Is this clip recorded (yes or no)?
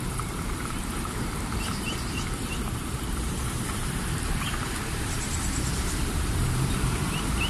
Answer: no